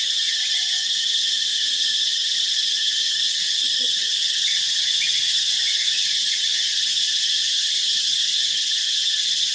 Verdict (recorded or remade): remade